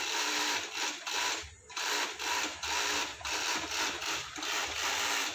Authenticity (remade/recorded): recorded